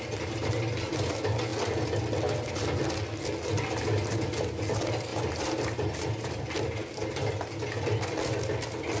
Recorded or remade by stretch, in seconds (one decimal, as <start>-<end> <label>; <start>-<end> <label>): 0.0-5.1 recorded; 5.1-6.4 remade; 6.4-9.0 recorded